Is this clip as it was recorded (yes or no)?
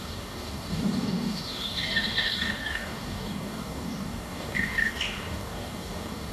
no